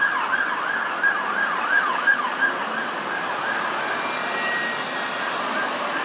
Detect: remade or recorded recorded